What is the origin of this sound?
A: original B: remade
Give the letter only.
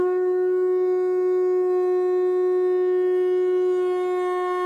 A